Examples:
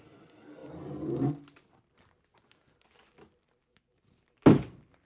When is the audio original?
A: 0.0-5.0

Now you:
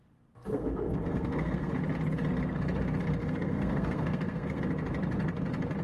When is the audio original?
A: 0.0-0.5; 1.8-3.2; 4.6-5.8